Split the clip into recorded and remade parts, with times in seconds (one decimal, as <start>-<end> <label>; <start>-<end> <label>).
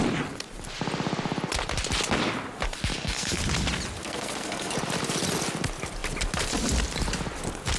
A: 0.0-2.9 recorded; 2.9-3.4 remade; 3.4-4.0 recorded; 4.0-4.7 remade; 4.7-7.8 recorded